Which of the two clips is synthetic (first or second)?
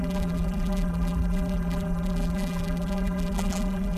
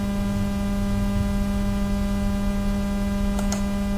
first